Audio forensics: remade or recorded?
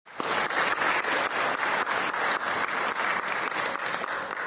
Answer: recorded